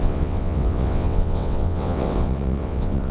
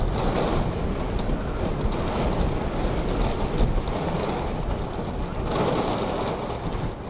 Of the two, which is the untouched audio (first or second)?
second